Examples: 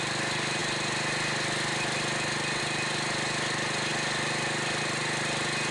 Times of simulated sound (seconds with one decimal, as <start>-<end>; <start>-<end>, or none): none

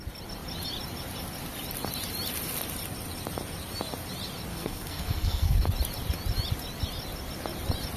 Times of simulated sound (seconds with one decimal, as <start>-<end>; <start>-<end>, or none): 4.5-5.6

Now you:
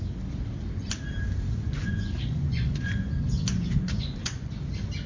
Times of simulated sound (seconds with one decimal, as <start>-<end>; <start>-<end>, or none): 1.5-4.5

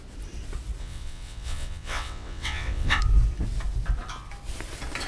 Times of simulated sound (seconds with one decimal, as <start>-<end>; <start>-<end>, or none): 0.8-3.0